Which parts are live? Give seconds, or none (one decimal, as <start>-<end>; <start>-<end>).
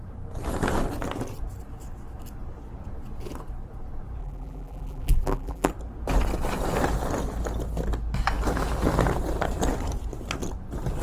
0.0-4.2; 5.7-11.0